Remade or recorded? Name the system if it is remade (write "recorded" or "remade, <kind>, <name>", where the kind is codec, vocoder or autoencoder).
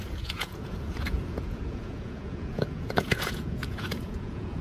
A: remade, vocoder, Vocos